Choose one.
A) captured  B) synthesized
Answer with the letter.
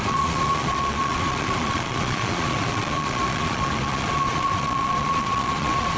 B